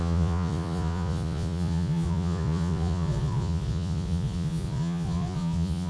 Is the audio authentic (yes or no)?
no